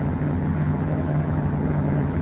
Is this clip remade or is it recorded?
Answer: remade